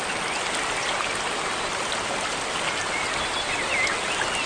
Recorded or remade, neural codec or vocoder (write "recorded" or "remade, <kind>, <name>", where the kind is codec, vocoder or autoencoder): recorded